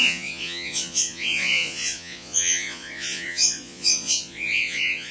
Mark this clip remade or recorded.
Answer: remade